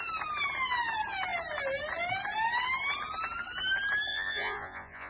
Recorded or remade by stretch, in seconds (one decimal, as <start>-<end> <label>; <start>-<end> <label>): 0.0-4.1 recorded; 4.1-5.1 remade